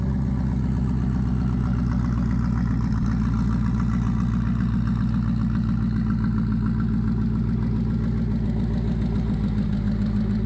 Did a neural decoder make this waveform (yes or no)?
no